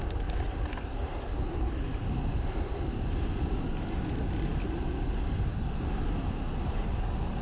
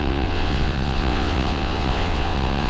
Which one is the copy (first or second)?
second